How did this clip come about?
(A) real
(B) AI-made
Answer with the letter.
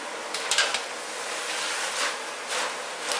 A